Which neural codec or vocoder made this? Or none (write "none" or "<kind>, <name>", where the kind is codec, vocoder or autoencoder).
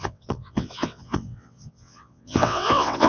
vocoder, WaveNeXt